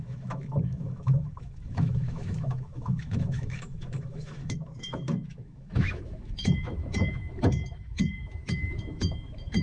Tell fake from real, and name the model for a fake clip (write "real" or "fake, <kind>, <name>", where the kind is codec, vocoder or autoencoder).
fake, autoencoder, DAC-VAE